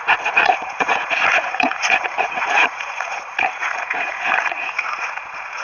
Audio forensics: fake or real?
fake